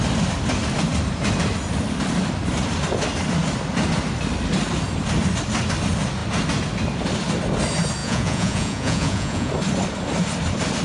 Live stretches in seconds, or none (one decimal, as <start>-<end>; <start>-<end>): 0.0-8.0; 9.5-10.8